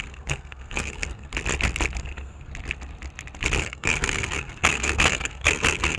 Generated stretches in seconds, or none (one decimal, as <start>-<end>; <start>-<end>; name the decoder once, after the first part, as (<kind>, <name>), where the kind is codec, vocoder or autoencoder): 0.0-1.3 (codec, SNAC); 2.0-2.5; 3.6-6.0